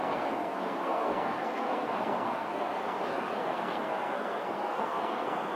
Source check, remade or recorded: remade